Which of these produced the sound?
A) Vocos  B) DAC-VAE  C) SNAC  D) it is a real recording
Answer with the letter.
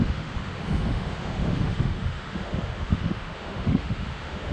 B